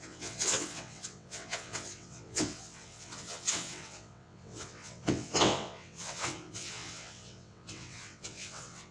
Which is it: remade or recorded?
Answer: remade